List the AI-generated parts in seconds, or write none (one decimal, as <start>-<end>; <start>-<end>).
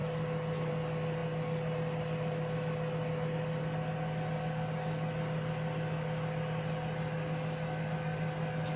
none